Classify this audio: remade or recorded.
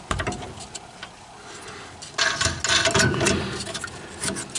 recorded